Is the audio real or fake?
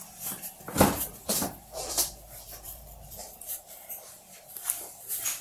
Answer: fake